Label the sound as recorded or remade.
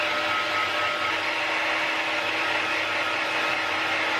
recorded